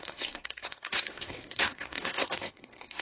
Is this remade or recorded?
remade